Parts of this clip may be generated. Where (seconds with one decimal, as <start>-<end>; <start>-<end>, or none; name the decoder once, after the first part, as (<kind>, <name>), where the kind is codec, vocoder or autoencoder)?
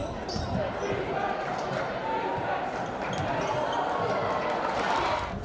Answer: none